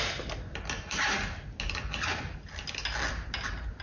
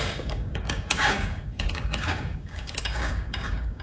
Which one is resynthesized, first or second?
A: second